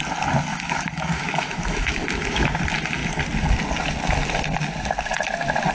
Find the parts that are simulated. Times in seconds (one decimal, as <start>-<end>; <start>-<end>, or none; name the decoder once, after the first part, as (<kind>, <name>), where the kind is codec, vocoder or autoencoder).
0.5-2.6 (autoencoder, DAC-VAE)

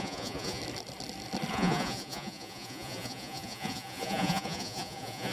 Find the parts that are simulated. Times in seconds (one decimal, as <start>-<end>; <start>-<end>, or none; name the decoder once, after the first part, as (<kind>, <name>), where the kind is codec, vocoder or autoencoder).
0.0-0.6 (vocoder, Vocos); 1.5-5.3

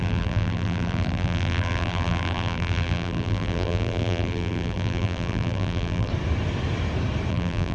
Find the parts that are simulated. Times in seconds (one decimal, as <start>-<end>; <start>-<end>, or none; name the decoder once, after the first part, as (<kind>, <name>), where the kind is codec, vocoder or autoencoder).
0.0-6.1 (vocoder, BigVGAN v2); 7.3-7.7

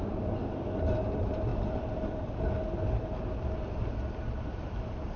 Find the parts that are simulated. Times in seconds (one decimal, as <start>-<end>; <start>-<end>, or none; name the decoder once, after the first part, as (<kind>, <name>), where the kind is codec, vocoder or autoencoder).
none

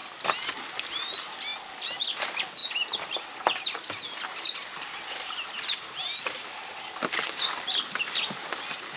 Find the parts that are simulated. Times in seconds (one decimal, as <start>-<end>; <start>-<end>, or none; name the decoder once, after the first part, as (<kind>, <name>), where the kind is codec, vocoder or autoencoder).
none

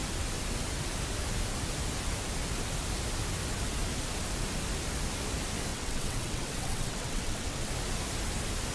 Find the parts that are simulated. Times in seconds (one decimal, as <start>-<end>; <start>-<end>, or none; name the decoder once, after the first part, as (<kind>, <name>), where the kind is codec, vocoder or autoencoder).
5.7-7.7 (vocoder, WaveNeXt)

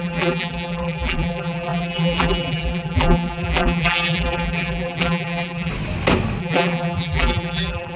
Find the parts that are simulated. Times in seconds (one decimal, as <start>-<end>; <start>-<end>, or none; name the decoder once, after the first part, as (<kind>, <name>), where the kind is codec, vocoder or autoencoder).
0.0-5.7 (vocoder, BigVGAN v2); 6.4-8.0

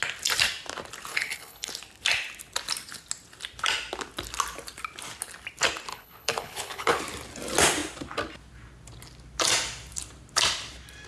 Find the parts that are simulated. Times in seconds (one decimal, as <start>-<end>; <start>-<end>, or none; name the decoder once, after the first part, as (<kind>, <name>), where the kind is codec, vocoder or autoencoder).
1.1-1.7 (codec, HILCodec); 5.9-7.0